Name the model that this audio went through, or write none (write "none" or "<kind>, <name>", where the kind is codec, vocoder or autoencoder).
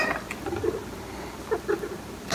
vocoder, BigVGAN v2